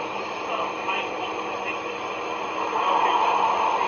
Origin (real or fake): real